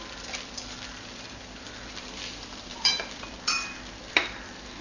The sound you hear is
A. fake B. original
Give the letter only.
A